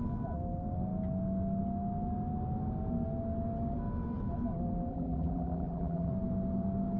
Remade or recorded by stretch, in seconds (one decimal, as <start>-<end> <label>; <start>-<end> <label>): 0.0-4.9 recorded; 4.9-6.1 remade; 6.1-7.0 recorded